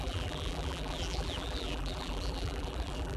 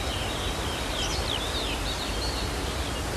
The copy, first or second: first